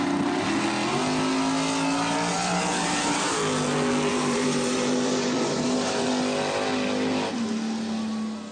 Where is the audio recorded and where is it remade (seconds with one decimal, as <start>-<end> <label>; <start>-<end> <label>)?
0.0-2.3 recorded; 2.3-3.3 remade; 3.3-4.1 recorded; 4.1-6.1 remade; 6.1-8.5 recorded